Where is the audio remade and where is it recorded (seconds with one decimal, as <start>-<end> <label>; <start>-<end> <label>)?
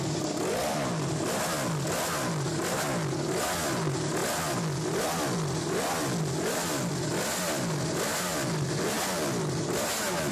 0.0-10.3 recorded